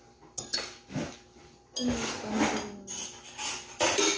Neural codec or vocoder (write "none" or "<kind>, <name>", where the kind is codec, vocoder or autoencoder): none